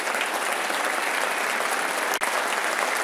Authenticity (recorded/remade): recorded